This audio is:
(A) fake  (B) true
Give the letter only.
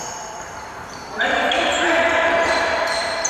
A